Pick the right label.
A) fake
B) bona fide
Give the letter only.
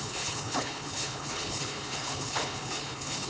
A